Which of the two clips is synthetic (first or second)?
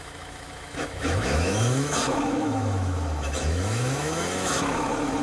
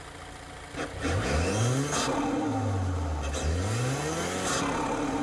first